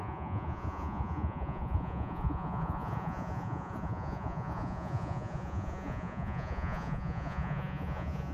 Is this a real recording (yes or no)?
no